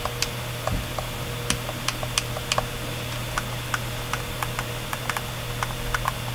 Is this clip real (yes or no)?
yes